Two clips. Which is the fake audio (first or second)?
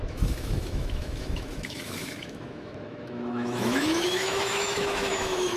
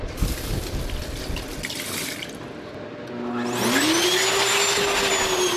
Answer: first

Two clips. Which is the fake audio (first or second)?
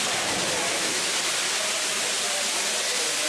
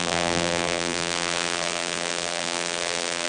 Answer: second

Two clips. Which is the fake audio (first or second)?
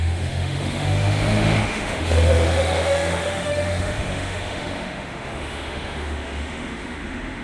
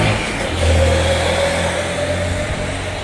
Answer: first